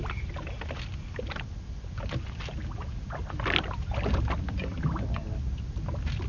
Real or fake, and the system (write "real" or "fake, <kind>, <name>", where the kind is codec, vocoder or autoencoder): real